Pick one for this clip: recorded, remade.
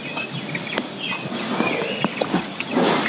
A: recorded